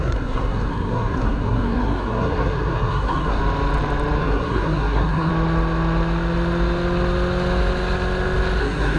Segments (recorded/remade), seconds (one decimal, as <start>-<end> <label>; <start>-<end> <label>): 0.0-3.4 remade; 3.4-4.2 recorded; 4.2-5.3 remade; 5.3-8.6 recorded; 8.6-9.0 remade